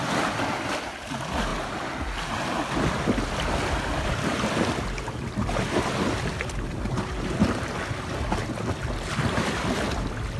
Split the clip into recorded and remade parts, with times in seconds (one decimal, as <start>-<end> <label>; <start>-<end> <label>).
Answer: 0.0-10.4 recorded